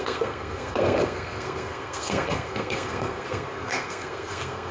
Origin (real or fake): fake